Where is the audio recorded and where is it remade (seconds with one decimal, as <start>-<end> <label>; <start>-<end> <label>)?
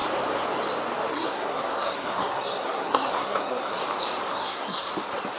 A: 0.0-1.1 recorded; 1.1-3.8 remade; 3.8-4.3 recorded; 4.3-4.9 remade; 4.9-5.4 recorded